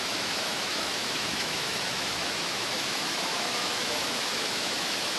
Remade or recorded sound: remade